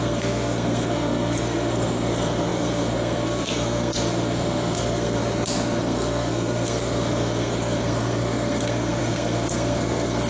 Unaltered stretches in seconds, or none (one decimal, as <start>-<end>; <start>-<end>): 5.2-5.8